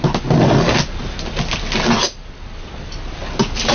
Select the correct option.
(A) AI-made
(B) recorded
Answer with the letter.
B